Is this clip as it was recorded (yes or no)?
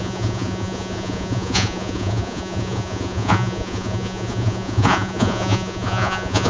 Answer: no